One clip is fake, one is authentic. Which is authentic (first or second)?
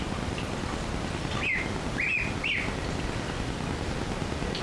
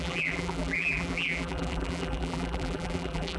first